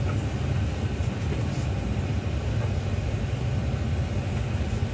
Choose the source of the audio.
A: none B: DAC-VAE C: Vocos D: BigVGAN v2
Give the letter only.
A